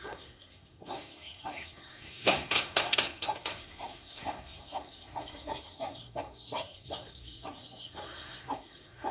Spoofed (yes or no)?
yes